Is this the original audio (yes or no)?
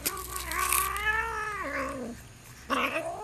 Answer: yes